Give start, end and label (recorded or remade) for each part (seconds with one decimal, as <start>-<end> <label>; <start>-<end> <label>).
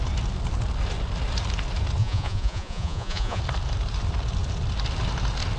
0.0-2.0 recorded; 2.0-3.4 remade; 3.4-5.6 recorded